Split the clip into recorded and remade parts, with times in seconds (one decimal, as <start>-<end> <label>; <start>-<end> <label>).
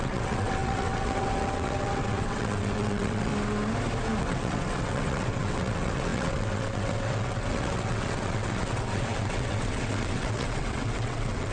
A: 0.0-3.3 remade; 3.3-4.2 recorded; 4.2-11.5 remade